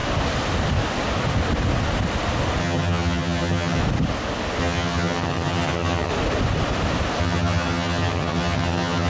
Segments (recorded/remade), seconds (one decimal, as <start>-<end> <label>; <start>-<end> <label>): 0.0-2.6 recorded; 2.6-3.8 remade; 3.8-4.6 recorded; 4.6-6.1 remade; 6.1-7.2 recorded; 7.2-9.1 remade